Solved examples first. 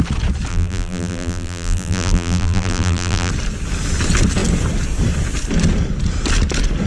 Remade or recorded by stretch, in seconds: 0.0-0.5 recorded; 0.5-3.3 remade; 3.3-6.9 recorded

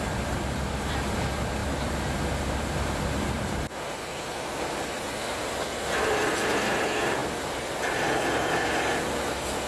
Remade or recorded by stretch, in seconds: 0.0-9.7 recorded

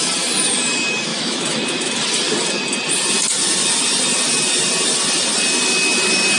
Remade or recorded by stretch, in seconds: 0.0-1.1 recorded; 1.1-1.9 remade; 1.9-6.4 recorded

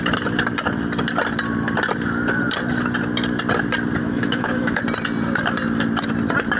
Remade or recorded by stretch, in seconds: 0.0-4.0 recorded; 4.0-4.8 remade; 4.8-6.6 recorded

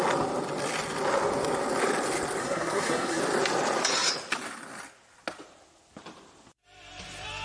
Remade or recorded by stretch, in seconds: 0.0-2.4 recorded; 2.4-3.2 remade; 3.2-7.4 recorded

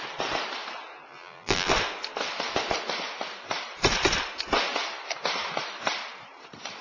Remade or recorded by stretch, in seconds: 0.0-1.1 recorded; 1.1-1.7 remade; 1.7-6.8 recorded

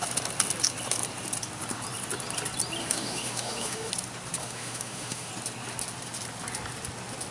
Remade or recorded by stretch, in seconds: 0.0-2.8 recorded; 2.8-3.9 remade; 3.9-4.4 recorded; 4.4-5.3 remade; 5.3-7.3 recorded